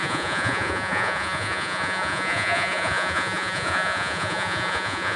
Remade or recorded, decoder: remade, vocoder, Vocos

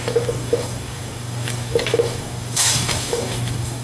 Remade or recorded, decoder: remade, codec, DAC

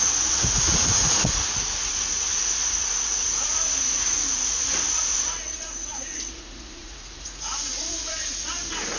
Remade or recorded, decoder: remade, vocoder, Vocos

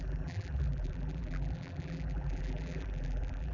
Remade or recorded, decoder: remade, vocoder, BigVGAN v2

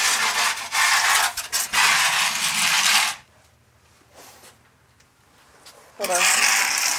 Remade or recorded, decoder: recorded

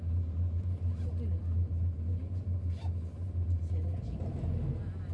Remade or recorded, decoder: recorded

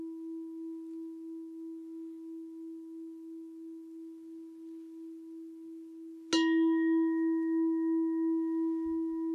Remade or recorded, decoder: recorded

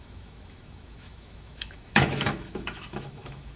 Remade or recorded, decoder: remade, autoencoder, DAC-VAE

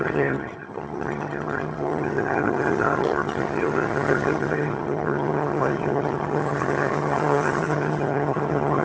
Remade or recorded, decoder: remade, vocoder, HiFi-GAN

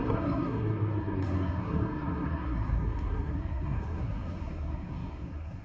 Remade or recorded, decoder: remade, codec, SNAC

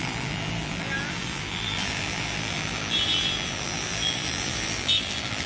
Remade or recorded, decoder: remade, vocoder, BigVGAN v2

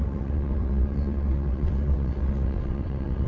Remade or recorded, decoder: remade, vocoder, WaveNeXt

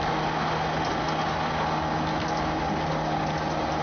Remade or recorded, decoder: recorded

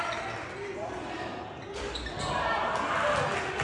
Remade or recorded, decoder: recorded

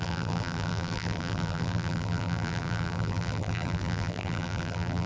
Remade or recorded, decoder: remade, vocoder, BigVGAN v2